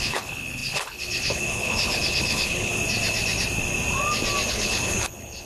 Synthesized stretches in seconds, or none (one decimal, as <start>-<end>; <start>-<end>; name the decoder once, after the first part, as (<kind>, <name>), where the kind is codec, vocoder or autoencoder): 0.0-2.7 (codec, HILCodec); 4.5-5.5